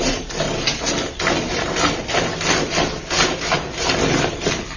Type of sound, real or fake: real